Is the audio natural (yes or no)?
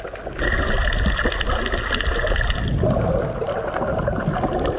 yes